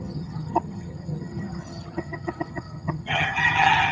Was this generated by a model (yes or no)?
yes